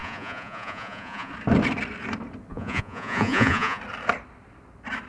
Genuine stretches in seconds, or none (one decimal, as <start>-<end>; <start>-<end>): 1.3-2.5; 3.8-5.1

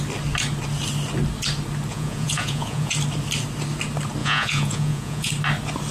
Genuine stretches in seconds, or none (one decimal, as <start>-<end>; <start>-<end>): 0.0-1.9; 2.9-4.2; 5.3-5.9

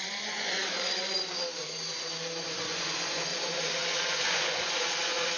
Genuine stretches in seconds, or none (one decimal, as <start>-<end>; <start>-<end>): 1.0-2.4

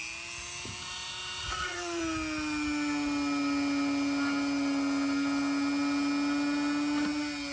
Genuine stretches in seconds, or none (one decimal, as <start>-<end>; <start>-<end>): 0.0-1.4; 2.0-7.5

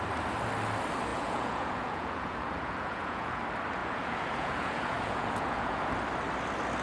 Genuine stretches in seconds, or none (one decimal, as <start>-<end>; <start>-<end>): 0.0-1.1; 3.4-3.8; 5.9-6.8